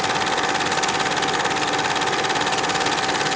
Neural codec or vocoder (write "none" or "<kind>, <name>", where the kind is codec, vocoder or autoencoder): none